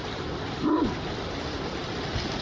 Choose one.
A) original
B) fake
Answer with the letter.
A